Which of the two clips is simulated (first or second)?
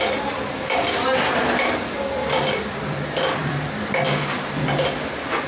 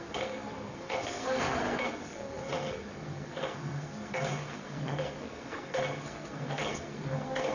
second